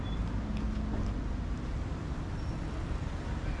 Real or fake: real